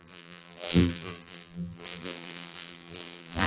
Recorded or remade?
remade